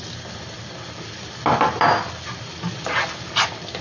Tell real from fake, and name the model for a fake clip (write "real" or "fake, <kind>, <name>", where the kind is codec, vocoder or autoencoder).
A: real